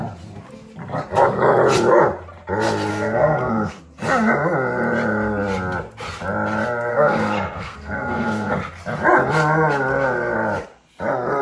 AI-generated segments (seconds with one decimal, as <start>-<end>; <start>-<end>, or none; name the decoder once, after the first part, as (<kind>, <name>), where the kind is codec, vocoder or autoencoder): 2.9-3.8 (codec, SNAC); 6.9-8.6